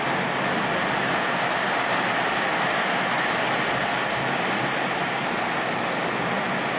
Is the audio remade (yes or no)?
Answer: no